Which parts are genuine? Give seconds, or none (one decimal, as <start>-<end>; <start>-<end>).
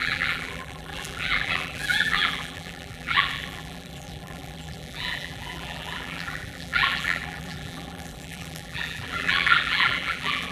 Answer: none